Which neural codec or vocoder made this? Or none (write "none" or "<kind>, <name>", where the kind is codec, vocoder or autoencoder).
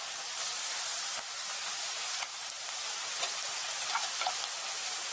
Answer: none